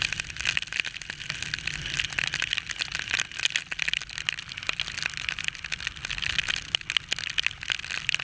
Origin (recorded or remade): recorded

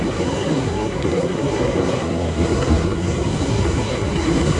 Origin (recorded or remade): remade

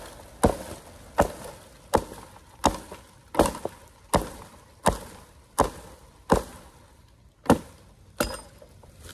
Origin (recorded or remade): recorded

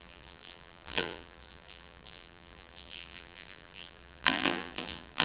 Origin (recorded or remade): remade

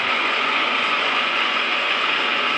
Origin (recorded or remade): remade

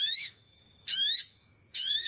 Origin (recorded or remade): remade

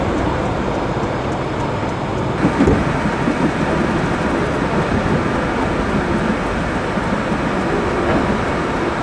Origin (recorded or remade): recorded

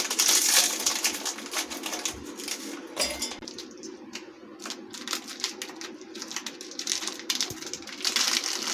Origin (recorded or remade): recorded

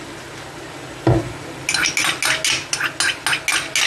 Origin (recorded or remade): recorded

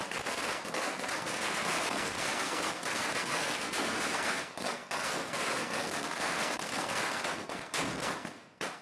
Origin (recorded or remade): remade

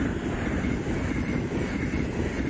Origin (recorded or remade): recorded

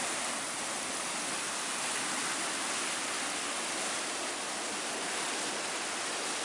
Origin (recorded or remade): recorded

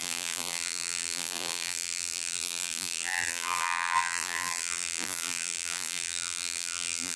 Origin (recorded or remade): remade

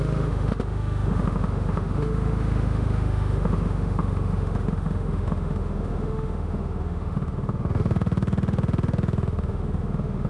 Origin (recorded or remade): remade